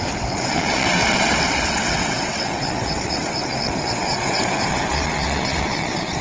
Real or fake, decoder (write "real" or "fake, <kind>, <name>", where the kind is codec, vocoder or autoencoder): fake, vocoder, WaveNeXt